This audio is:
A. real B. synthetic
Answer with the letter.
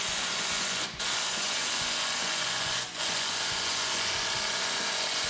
B